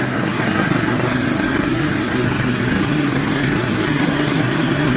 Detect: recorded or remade remade